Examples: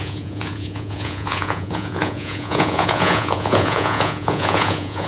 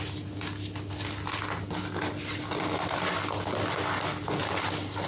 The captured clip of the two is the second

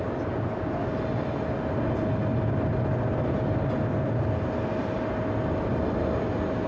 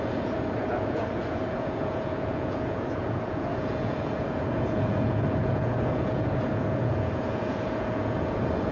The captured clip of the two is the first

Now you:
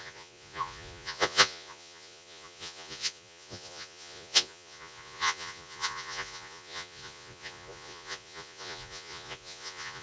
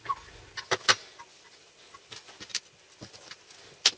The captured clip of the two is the second